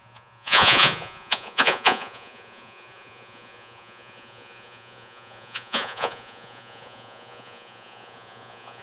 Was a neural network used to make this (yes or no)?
yes